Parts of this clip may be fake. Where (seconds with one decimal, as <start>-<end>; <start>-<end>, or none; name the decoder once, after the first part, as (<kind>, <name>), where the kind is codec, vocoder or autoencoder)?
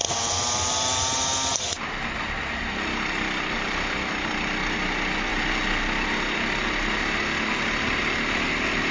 none